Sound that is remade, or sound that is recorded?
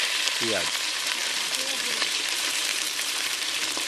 remade